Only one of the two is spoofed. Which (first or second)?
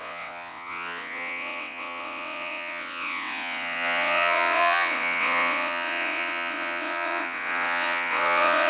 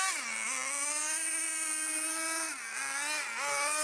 first